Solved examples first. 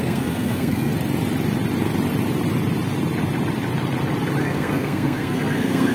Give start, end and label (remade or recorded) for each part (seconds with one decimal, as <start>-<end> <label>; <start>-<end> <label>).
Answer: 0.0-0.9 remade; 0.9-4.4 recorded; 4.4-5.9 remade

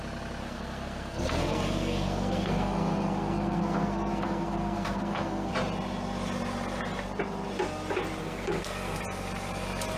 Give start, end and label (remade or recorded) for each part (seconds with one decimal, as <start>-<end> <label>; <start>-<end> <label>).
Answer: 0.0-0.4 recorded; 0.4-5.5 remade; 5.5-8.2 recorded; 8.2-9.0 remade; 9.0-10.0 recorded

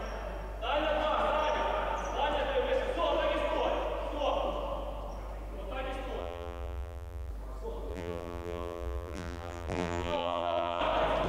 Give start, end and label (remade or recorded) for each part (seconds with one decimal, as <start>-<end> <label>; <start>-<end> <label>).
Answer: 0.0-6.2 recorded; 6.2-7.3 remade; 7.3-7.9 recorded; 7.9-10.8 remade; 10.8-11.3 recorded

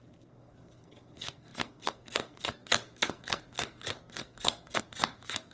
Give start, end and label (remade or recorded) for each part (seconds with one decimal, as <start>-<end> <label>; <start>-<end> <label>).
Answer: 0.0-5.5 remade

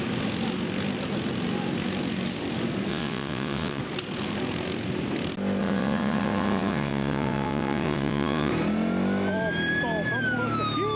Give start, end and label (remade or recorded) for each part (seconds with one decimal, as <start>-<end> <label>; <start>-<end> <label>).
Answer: 0.0-2.9 recorded; 2.9-3.8 remade; 3.8-5.6 recorded; 5.6-8.5 remade; 8.5-11.0 recorded